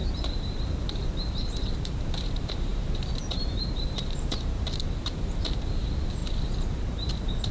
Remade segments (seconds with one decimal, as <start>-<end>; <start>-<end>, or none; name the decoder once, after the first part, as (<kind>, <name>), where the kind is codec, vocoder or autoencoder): 0.0-6.2 (vocoder, BigVGAN v2); 6.8-7.5